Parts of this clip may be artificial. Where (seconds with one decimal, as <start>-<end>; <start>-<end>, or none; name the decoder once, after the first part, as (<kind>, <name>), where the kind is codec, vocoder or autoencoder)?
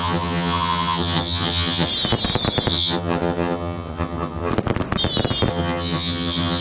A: 0.0-1.9 (vocoder, HiFi-GAN); 2.7-4.5; 5.5-6.6